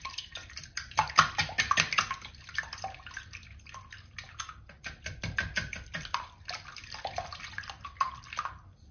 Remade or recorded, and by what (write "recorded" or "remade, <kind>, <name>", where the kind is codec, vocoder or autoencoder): recorded